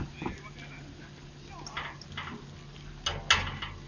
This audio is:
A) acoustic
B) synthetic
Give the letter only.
A